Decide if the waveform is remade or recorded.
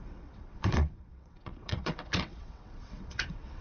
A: remade